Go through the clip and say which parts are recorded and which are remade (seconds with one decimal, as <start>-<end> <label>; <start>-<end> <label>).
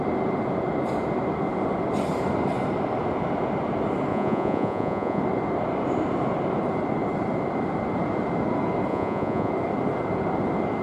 0.0-4.1 recorded; 4.1-5.2 remade; 5.2-8.9 recorded; 8.9-9.5 remade; 9.5-10.8 recorded